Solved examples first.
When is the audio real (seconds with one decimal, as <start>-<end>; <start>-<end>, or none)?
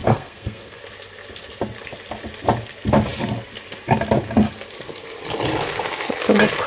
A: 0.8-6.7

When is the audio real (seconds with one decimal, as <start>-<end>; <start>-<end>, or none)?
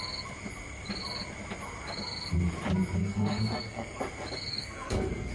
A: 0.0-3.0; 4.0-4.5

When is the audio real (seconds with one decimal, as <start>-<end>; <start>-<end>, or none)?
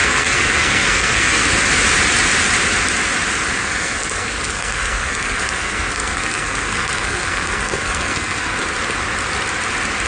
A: 1.5-3.6; 8.6-10.1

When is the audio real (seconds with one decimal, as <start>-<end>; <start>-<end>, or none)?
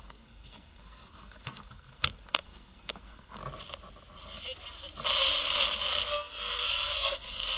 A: 3.4-5.8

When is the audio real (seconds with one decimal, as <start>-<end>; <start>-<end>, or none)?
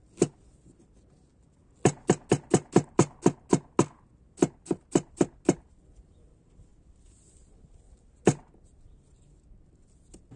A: 0.0-10.4